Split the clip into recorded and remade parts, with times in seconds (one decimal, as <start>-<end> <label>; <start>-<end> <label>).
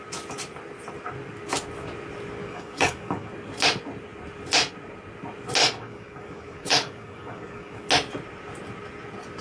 0.0-2.4 recorded; 2.4-3.3 remade; 3.3-5.6 recorded; 5.6-7.9 remade; 7.9-9.4 recorded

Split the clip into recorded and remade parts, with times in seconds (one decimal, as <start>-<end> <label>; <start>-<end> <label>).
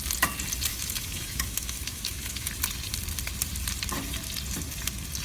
0.0-0.7 recorded; 0.7-2.5 remade; 2.5-5.2 recorded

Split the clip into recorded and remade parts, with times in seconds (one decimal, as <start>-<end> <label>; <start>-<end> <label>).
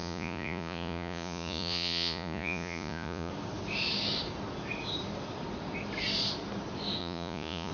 0.0-3.3 remade; 3.3-7.0 recorded; 7.0-7.7 remade